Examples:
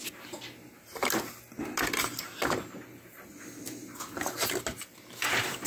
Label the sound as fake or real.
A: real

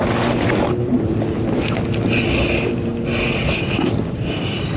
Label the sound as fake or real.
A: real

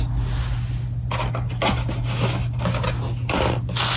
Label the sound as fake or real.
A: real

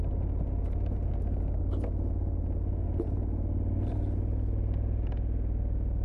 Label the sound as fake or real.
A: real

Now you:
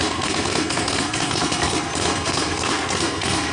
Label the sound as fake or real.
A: fake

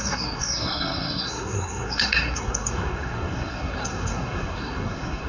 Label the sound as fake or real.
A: fake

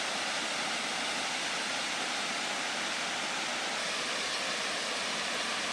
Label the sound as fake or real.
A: real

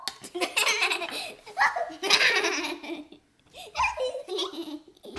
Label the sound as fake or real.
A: real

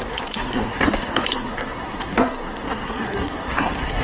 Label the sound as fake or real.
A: fake